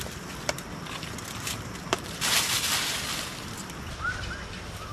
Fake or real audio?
fake